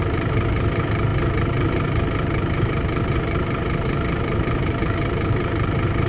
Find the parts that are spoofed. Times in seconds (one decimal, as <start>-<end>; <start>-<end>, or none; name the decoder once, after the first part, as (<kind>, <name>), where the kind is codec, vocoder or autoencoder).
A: 0.0-6.1 (vocoder, BigVGAN v2)